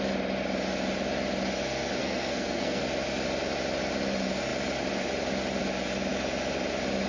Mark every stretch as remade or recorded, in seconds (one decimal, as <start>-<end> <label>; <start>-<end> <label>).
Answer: 0.0-2.0 recorded; 2.0-2.8 remade; 2.8-7.1 recorded